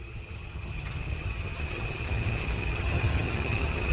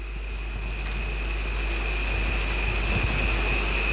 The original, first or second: second